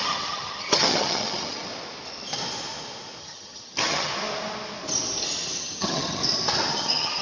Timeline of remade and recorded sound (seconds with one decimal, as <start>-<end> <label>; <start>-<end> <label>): 0.0-1.7 remade; 1.7-3.2 recorded; 3.2-4.1 remade; 4.1-5.6 recorded; 5.6-6.2 remade; 6.2-6.7 recorded; 6.7-7.2 remade